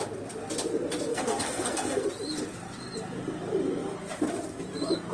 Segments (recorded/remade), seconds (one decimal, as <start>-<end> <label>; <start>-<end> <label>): 0.0-1.1 recorded; 1.1-2.1 remade; 2.1-5.1 recorded